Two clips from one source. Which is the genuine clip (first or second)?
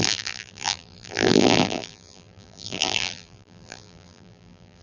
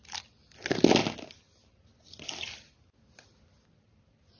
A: second